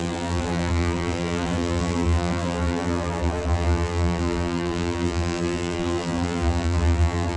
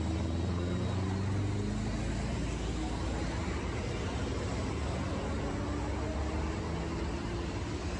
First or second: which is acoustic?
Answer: second